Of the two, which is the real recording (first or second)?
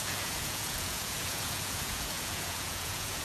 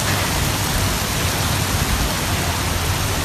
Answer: second